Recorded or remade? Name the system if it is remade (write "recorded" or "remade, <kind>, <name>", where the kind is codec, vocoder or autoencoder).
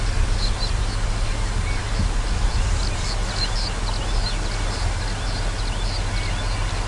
recorded